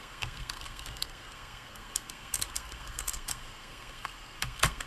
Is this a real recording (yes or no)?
no